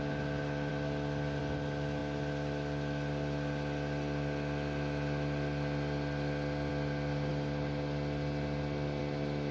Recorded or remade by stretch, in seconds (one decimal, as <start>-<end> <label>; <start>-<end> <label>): 0.0-9.5 recorded